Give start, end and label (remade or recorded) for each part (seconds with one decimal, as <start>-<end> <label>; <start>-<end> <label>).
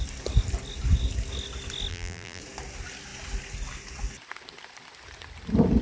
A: 0.0-1.9 recorded; 1.9-2.4 remade; 2.4-5.8 recorded